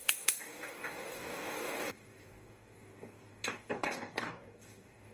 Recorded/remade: remade